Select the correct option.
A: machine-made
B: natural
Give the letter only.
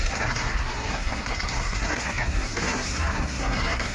A